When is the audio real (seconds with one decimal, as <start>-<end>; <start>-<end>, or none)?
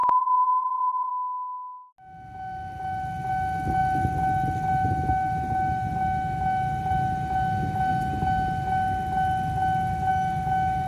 1.1-10.9